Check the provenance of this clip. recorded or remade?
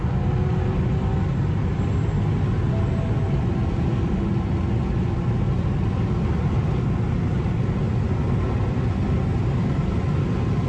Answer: recorded